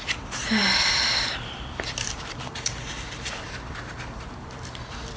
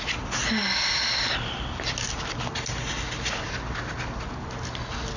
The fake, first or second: first